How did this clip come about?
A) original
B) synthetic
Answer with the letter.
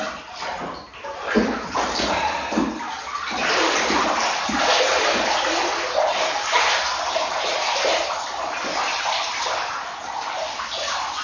A